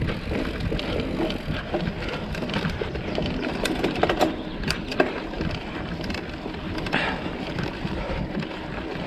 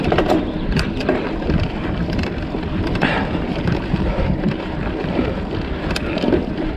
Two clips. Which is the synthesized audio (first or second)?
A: second